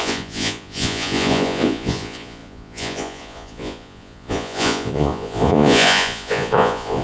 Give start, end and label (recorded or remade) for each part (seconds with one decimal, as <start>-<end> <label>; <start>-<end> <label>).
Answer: 0.0-7.0 remade